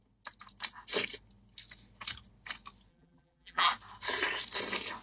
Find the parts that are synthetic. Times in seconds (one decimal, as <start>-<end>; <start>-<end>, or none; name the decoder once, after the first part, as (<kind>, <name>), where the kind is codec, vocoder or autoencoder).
2.9-3.7 (vocoder, BigVGAN v2)